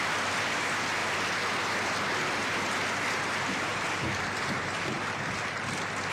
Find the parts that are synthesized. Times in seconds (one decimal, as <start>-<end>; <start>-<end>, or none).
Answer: none

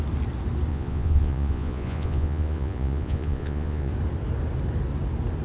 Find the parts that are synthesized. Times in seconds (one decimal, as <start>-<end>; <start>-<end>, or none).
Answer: 0.7-3.9

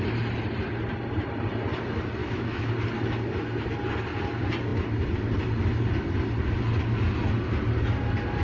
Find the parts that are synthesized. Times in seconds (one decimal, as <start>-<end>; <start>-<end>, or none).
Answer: 2.2-2.7